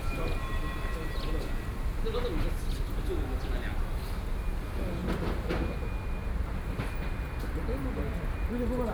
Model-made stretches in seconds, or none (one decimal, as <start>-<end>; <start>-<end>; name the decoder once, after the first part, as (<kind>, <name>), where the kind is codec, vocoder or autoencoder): none